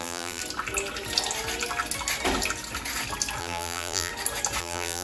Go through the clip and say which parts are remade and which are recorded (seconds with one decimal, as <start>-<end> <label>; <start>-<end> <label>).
0.0-0.4 remade; 0.4-3.4 recorded; 3.4-4.1 remade; 4.1-4.6 recorded; 4.6-5.0 remade